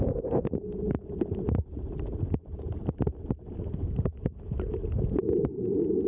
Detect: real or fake real